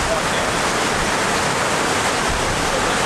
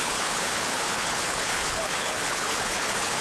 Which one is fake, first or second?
second